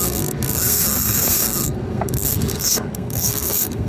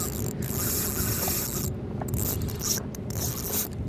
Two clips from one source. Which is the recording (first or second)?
second